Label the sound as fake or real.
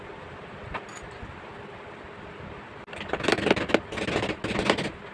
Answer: real